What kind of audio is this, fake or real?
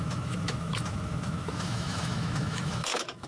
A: fake